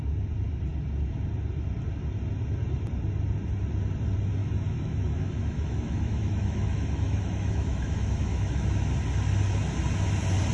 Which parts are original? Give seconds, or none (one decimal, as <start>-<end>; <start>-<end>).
0.0-4.4; 8.9-10.5

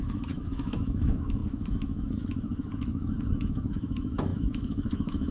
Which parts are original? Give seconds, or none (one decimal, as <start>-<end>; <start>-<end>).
none

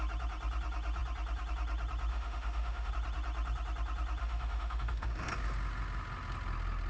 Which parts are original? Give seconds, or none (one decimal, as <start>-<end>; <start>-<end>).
0.0-2.1; 2.9-4.2; 5.3-6.9

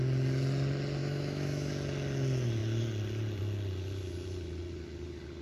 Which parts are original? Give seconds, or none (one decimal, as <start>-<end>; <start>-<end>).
0.0-1.0; 1.7-5.4

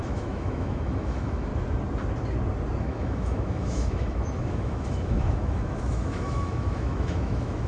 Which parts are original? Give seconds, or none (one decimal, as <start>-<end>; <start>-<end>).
1.5-2.8